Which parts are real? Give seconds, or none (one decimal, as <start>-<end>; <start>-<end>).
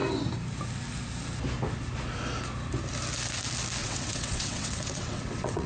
0.0-3.8